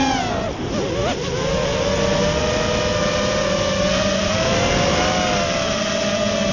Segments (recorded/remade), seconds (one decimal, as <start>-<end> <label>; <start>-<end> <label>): 0.0-6.5 recorded